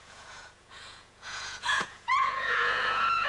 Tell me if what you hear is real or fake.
fake